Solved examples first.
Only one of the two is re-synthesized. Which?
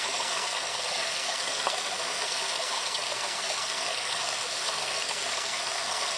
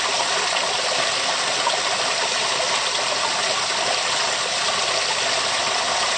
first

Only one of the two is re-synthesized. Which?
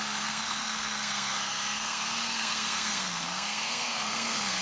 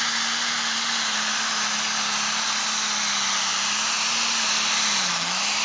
first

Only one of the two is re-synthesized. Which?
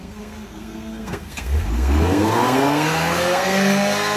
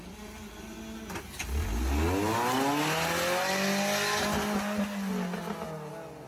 first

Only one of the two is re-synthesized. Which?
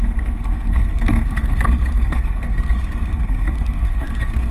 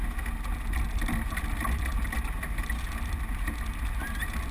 first